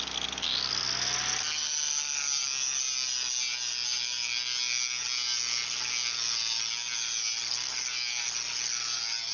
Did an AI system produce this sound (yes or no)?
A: no